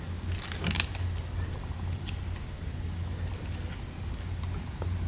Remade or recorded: recorded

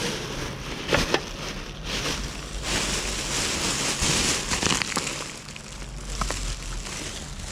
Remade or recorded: recorded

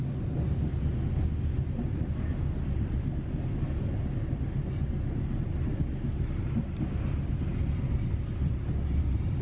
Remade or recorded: recorded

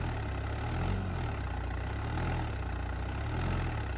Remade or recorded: recorded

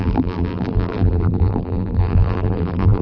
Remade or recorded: remade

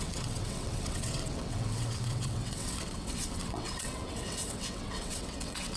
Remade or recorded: remade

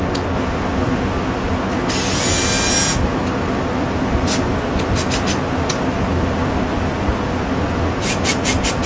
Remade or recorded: recorded